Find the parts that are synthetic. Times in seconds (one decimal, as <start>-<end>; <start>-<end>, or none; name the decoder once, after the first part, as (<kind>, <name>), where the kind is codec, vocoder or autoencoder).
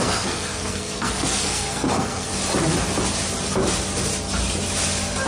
0.0-2.3 (codec, SNAC)